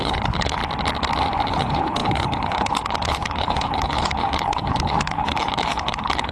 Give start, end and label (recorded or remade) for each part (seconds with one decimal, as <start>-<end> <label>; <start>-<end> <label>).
0.0-0.6 remade; 0.6-1.5 recorded; 1.5-6.3 remade